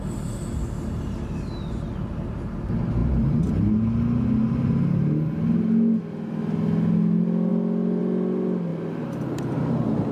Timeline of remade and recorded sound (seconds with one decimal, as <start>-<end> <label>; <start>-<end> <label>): 0.0-3.0 recorded; 3.0-3.7 remade; 3.7-8.7 recorded; 8.7-9.6 remade; 9.6-10.1 recorded